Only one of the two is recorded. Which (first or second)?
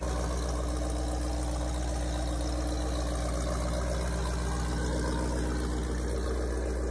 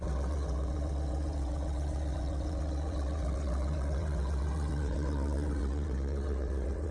first